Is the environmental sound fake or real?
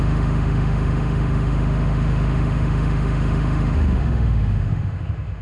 fake